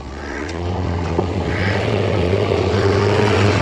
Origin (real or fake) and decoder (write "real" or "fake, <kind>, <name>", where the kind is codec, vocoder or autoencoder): fake, vocoder, WaveNeXt